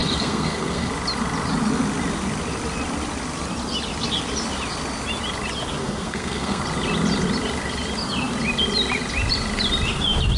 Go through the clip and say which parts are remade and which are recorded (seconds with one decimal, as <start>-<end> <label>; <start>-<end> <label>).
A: 0.0-0.9 remade; 0.9-5.8 recorded; 5.8-6.6 remade; 6.6-10.4 recorded